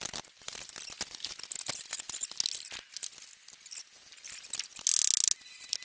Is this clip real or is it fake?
real